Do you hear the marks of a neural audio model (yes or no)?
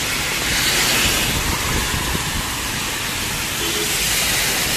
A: no